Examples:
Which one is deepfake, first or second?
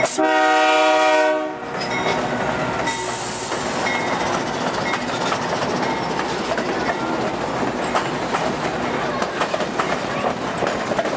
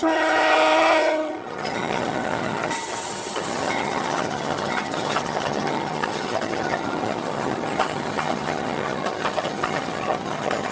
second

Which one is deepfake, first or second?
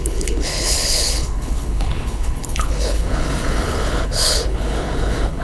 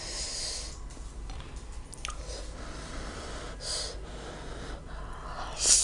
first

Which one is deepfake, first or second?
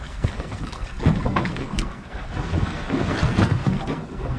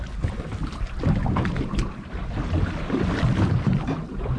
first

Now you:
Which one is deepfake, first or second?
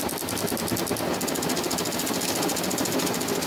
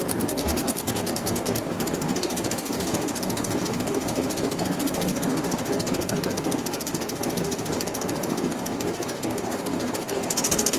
second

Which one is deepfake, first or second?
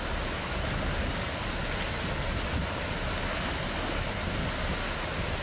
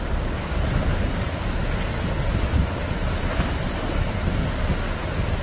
second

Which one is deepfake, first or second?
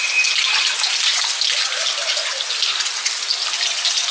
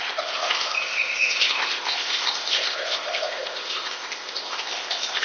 second